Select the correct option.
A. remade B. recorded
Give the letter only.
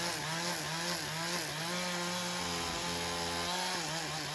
B